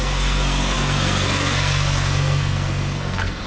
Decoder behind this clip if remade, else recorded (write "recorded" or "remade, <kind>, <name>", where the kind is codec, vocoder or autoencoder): remade, codec, SNAC